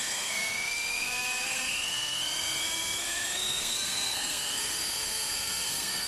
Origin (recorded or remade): remade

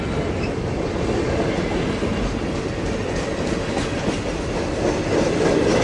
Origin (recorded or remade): recorded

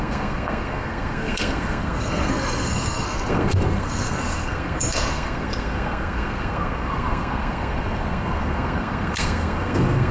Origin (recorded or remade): remade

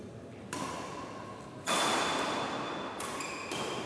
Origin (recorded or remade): recorded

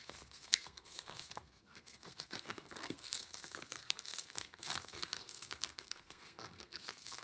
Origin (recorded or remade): remade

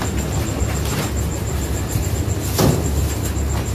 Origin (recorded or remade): recorded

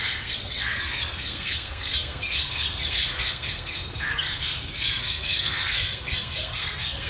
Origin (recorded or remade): remade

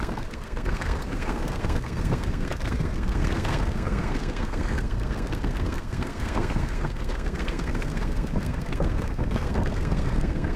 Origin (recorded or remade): remade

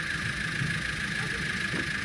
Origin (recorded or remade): recorded